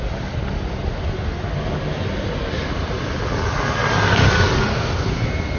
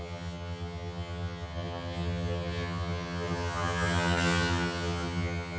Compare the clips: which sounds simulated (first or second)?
second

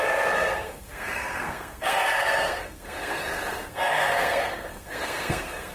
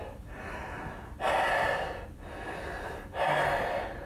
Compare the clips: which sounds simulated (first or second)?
first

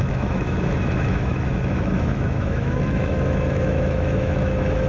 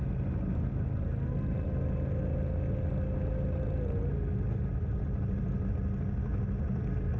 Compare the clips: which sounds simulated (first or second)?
first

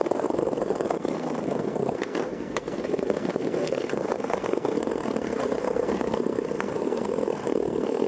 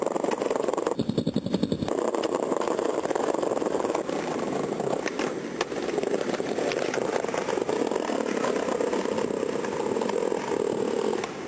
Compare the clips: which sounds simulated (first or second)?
first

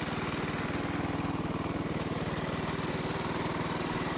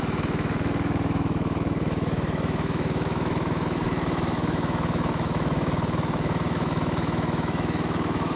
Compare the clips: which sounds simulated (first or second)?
second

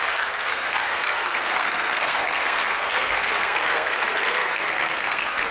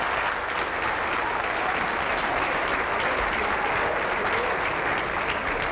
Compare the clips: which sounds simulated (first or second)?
first